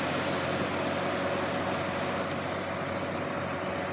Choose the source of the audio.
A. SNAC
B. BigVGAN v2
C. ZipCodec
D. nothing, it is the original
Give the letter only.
D